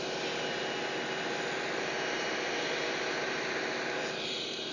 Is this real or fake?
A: real